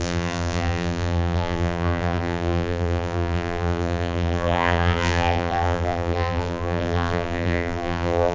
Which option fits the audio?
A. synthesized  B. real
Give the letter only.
A